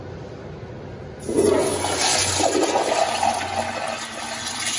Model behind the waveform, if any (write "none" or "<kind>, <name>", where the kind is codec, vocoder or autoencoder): none